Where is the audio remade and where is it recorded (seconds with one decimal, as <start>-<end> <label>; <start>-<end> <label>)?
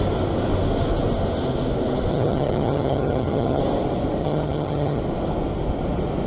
0.0-2.1 recorded; 2.1-3.6 remade; 3.6-4.2 recorded; 4.2-5.0 remade; 5.0-6.3 recorded